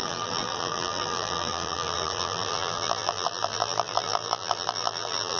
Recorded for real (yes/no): no